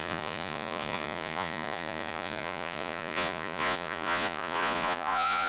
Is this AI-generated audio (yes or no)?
yes